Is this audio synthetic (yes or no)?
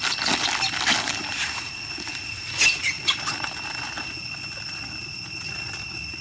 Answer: no